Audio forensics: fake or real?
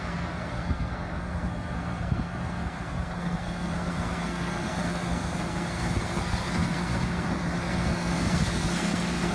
fake